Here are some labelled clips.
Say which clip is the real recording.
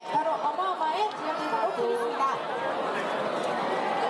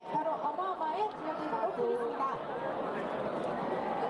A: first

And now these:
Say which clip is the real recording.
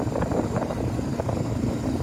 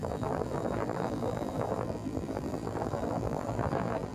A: first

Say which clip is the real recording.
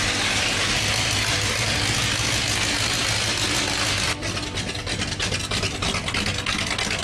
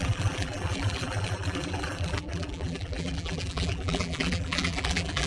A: first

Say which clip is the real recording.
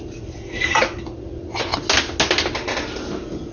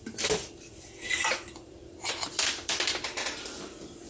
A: first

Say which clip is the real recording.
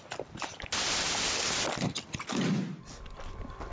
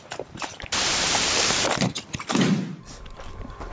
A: first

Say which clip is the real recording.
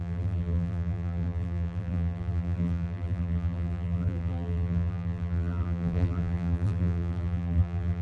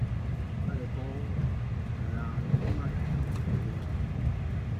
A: second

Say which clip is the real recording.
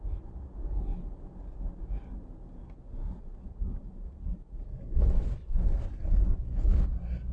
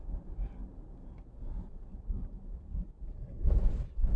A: first